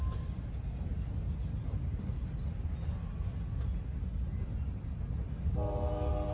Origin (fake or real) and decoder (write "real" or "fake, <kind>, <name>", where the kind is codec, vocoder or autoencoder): real